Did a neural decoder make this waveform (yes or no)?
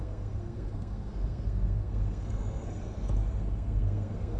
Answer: yes